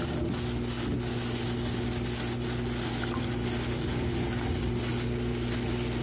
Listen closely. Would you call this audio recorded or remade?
recorded